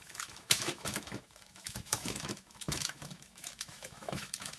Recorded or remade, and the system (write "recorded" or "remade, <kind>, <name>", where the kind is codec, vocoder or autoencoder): remade, autoencoder, DAC-VAE